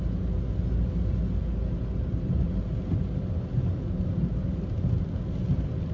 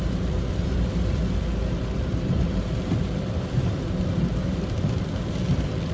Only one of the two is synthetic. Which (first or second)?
second